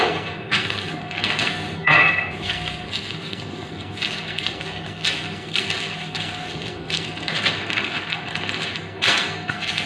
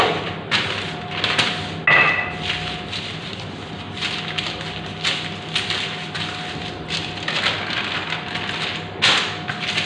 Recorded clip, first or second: second